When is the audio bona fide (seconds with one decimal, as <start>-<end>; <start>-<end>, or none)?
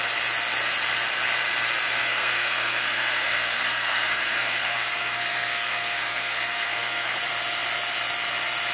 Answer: 0.0-2.0; 7.2-8.7